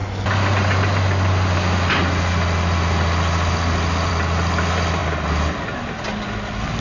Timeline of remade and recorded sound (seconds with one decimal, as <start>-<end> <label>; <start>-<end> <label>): 0.0-6.8 recorded